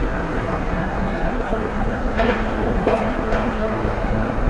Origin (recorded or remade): remade